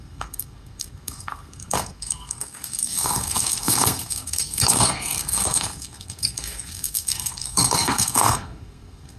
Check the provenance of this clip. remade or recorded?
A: remade